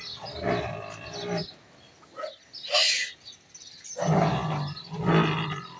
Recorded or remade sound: recorded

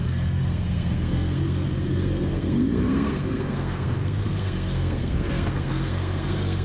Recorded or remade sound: remade